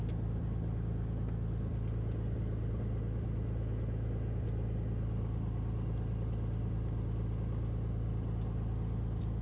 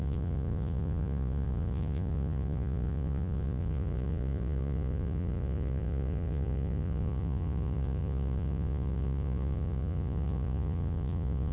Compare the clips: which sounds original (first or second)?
first